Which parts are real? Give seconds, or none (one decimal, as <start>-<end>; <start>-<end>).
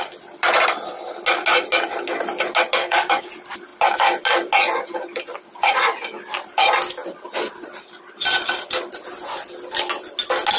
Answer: 0.0-2.8; 3.3-10.6